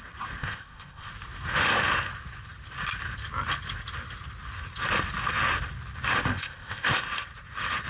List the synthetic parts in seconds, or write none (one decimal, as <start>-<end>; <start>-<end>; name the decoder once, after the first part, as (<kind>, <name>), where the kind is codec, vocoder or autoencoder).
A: 0.4-1.1 (codec, ZipCodec); 6.3-6.9